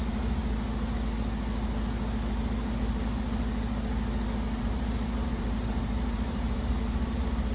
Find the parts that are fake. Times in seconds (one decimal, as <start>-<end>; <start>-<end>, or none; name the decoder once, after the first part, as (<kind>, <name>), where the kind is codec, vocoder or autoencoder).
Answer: 0.0-0.4 (vocoder, BigVGAN v2); 4.6-7.5